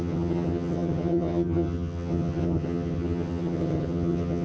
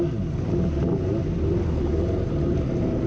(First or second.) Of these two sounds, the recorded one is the second